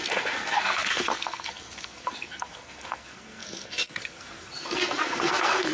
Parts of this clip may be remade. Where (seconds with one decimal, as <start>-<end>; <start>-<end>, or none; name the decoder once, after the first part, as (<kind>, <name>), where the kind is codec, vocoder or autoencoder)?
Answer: 0.0-5.7 (codec, SNAC)